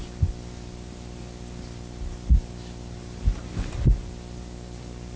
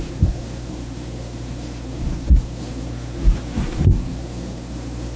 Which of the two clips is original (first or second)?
first